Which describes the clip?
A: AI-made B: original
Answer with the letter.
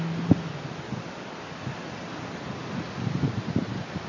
B